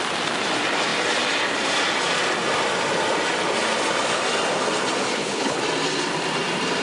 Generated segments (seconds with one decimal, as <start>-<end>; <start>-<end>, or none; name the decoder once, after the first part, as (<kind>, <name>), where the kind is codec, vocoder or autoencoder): 5.1-5.6 (codec, HILCodec)